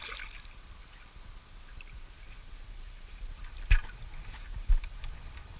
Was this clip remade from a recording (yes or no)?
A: no